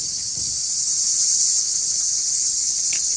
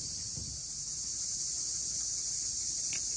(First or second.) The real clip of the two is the first